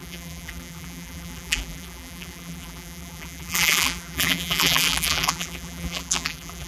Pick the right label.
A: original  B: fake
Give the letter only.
B